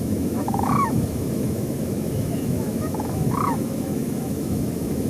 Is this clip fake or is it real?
fake